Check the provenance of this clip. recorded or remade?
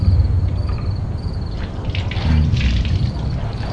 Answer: recorded